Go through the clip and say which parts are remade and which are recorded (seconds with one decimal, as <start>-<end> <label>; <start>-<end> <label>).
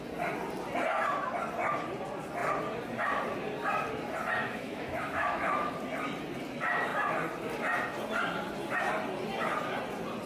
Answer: 0.0-4.4 recorded; 4.4-5.7 remade; 5.7-10.3 recorded